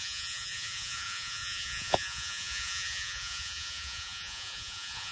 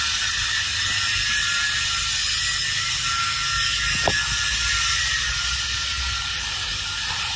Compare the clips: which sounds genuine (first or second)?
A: second